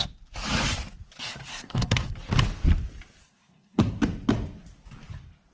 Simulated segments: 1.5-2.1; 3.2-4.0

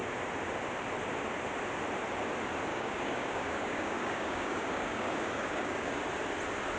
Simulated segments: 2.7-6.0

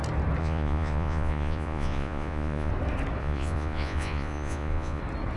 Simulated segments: 0.4-2.7; 3.2-5.0

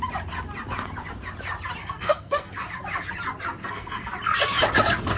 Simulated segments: 1.8-2.5; 3.6-4.1

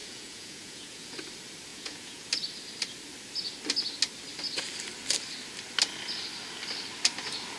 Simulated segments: 0.0-1.2; 1.7-2.3